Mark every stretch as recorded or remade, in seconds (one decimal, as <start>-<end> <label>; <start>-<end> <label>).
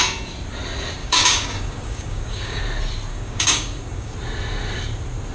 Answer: 0.0-1.0 recorded; 1.0-2.6 remade; 2.6-3.1 recorded; 3.1-4.1 remade; 4.1-5.3 recorded